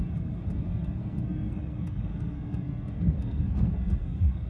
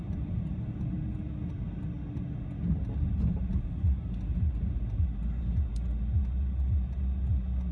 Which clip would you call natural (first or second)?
second